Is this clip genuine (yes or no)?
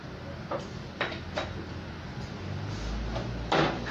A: yes